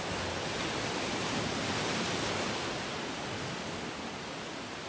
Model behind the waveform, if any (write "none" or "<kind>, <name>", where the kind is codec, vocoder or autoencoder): none